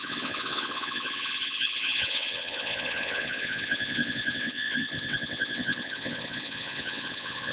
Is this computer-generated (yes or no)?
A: yes